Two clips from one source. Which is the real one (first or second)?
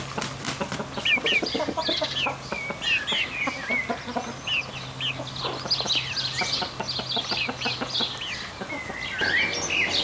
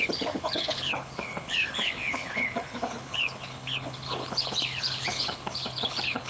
first